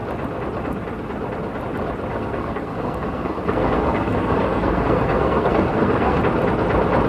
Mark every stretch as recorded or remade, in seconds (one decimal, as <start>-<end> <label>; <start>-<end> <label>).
0.0-2.1 recorded; 2.1-6.2 remade; 6.2-7.1 recorded